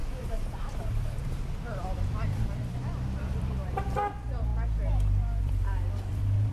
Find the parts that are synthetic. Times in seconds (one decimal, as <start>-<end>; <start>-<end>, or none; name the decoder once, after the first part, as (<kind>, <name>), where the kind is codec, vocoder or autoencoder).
0.0-4.5 (vocoder, BigVGAN v2); 5.4-6.5